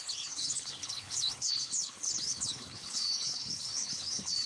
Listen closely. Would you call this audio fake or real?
fake